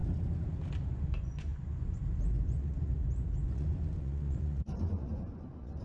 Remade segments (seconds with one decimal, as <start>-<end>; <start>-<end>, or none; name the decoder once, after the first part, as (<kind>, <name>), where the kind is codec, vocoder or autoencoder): 0.9-5.8 (vocoder, Vocos)